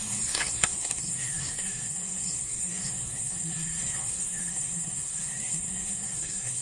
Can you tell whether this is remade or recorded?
remade